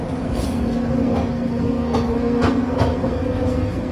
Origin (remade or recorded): remade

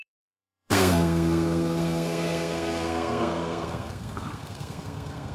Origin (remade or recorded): remade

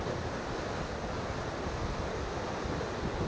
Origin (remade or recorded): recorded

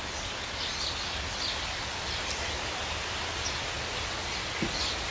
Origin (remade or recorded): recorded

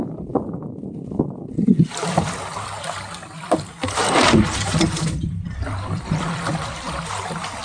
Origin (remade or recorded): recorded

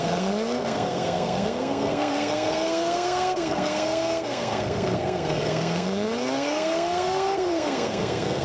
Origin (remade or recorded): remade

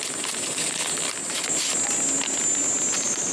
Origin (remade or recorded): recorded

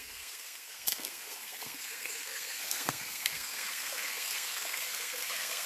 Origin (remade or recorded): remade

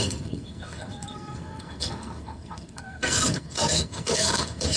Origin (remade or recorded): remade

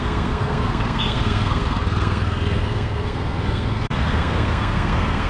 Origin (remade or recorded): remade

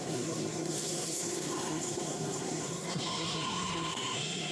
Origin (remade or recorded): remade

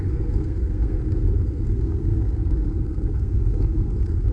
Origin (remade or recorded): remade